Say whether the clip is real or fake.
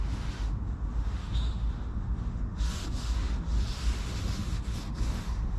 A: fake